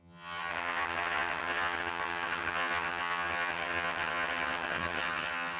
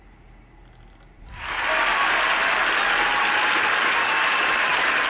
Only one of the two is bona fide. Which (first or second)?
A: second